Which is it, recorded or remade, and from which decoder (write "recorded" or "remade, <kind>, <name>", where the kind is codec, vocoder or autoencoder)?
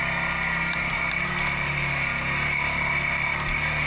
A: recorded